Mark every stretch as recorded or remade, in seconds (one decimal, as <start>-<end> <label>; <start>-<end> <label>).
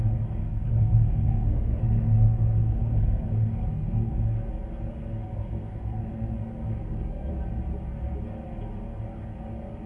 0.0-0.4 recorded; 0.4-4.5 remade; 4.5-4.9 recorded; 4.9-7.3 remade; 7.3-9.9 recorded